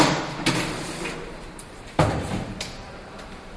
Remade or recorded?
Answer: remade